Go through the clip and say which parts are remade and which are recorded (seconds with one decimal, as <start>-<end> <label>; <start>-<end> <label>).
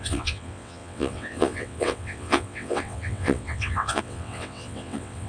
0.0-5.3 remade